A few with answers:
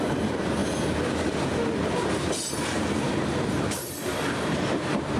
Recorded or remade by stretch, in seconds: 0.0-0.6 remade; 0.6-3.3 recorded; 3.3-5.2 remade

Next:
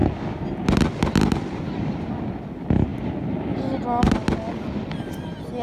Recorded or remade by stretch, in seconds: 0.0-5.6 recorded

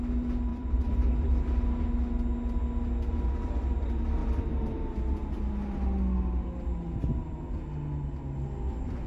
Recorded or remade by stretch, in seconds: 0.0-0.5 recorded; 0.5-1.1 remade; 1.1-4.2 recorded; 4.2-4.9 remade; 4.9-9.1 recorded

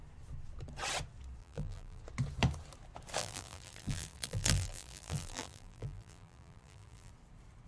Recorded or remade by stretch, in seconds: 0.0-1.4 recorded; 1.4-2.0 remade; 2.0-3.2 recorded; 3.2-7.1 remade; 7.1-7.7 recorded